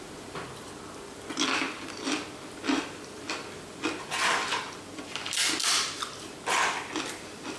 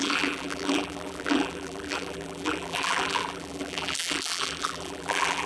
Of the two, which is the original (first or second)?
first